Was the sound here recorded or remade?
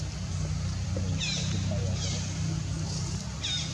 recorded